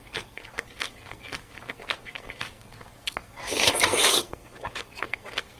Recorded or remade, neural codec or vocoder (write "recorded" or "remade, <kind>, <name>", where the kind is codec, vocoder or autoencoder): remade, codec, SNAC